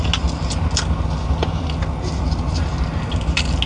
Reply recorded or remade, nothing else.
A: recorded